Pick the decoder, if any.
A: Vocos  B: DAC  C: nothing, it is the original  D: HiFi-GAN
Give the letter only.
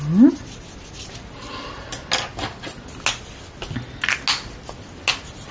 C